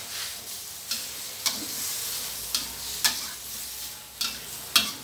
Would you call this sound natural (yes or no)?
yes